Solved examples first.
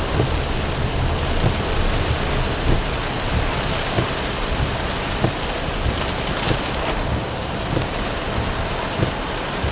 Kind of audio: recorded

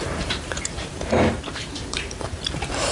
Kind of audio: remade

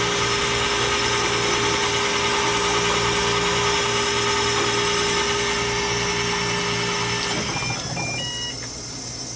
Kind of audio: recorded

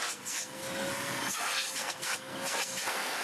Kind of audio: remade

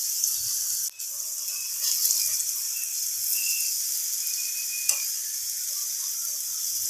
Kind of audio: recorded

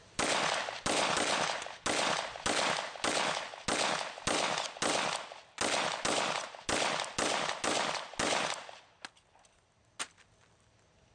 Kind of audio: recorded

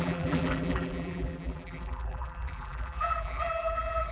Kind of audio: remade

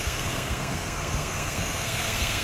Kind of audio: remade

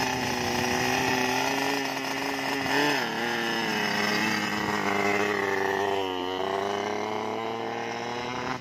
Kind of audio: recorded